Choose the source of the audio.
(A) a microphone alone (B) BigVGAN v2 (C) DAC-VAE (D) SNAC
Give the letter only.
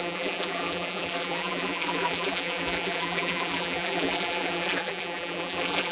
B